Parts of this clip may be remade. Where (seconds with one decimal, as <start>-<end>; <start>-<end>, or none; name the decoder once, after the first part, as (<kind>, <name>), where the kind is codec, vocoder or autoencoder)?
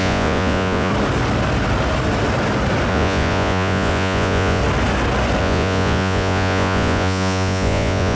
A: 0.0-0.9 (vocoder, Vocos); 2.9-4.6; 5.4-8.2